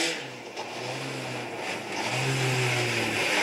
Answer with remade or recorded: recorded